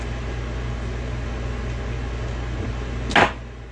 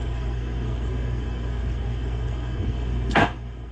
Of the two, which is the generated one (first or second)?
second